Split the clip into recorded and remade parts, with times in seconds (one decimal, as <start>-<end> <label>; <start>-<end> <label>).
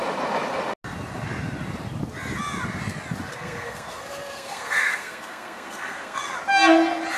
0.0-3.3 recorded; 3.3-6.2 remade; 6.2-7.2 recorded